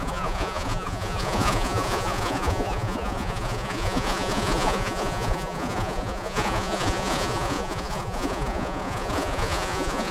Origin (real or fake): fake